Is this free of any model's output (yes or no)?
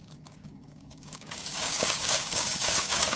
no